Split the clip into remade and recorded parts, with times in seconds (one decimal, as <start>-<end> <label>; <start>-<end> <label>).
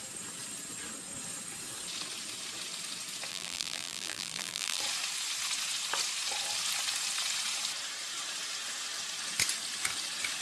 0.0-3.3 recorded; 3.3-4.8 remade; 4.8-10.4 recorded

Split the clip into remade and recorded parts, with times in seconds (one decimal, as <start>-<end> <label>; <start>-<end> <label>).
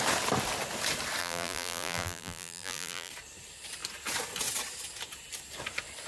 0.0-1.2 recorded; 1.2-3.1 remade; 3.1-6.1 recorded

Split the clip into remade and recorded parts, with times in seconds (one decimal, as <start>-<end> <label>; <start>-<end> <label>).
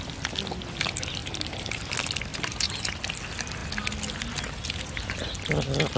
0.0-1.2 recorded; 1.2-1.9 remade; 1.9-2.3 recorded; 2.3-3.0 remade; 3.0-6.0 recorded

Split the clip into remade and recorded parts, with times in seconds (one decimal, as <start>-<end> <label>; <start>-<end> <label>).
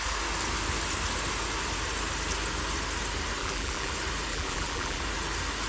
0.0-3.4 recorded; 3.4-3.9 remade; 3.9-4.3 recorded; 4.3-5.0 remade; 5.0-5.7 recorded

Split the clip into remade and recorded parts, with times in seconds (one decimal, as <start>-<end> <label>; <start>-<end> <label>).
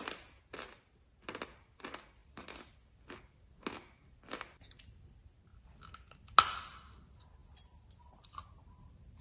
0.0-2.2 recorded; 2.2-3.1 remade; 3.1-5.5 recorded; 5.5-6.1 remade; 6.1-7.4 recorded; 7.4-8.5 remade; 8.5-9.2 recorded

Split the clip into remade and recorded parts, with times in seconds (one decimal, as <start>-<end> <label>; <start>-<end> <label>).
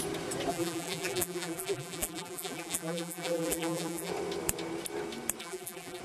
0.0-0.5 recorded; 0.5-4.1 remade; 4.1-5.4 recorded; 5.4-6.0 remade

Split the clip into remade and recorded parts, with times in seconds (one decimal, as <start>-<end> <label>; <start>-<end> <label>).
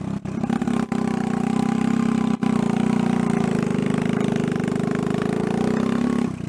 0.0-6.5 recorded